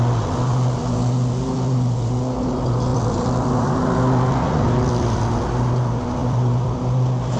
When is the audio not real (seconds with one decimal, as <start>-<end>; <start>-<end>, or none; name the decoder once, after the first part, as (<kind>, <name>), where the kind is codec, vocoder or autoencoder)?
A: 2.9-3.7 (vocoder, BigVGAN v2); 6.2-6.8